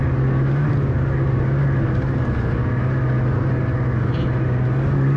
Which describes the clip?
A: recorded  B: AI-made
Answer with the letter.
A